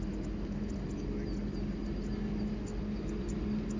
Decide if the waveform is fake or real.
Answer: real